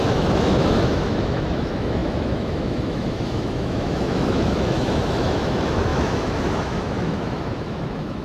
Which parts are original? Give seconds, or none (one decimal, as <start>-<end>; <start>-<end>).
none